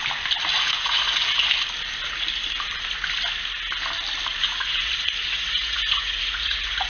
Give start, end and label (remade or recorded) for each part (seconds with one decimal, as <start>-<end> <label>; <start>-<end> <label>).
0.0-0.5 recorded; 0.5-1.5 remade; 1.5-4.3 recorded; 4.3-6.9 remade